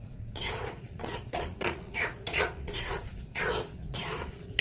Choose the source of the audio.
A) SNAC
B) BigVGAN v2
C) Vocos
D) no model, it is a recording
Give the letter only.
C